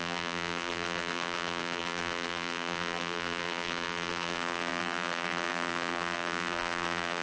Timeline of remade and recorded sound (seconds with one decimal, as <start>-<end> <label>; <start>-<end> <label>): 0.0-7.2 remade